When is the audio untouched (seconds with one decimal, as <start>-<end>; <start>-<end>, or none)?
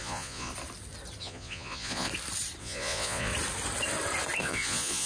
0.5-1.2; 2.1-2.6; 3.3-4.4